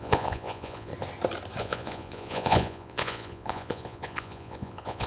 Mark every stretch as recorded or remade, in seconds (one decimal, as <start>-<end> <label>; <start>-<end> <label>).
0.0-0.9 remade; 0.9-1.6 recorded; 1.6-5.1 remade